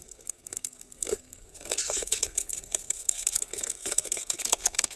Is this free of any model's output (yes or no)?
no